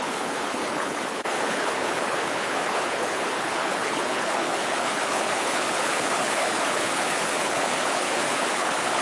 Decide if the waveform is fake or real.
fake